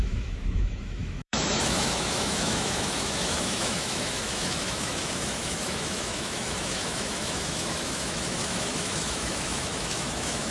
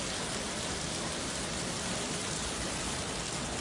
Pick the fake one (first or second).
first